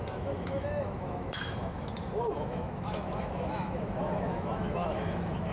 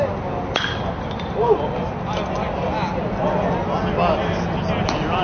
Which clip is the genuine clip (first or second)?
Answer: second